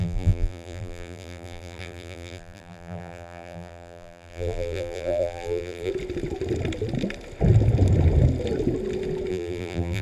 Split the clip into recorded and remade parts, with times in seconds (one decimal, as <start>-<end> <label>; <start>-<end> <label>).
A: 0.0-5.9 remade; 5.9-9.3 recorded; 9.3-10.0 remade